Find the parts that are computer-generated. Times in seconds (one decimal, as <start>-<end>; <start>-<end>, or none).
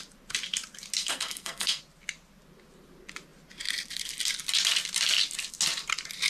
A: 1.0-1.8